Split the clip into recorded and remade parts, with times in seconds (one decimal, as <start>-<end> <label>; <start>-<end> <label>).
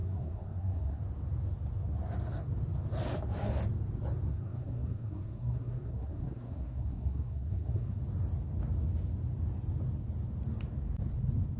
0.0-1.0 remade; 1.0-4.3 recorded; 4.3-8.0 remade; 8.0-11.6 recorded